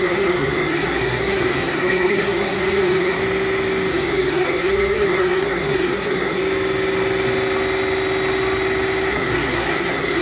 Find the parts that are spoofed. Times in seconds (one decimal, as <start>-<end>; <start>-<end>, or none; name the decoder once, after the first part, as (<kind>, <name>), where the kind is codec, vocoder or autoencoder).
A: 0.0-3.2 (codec, SNAC); 3.9-6.4; 9.1-10.2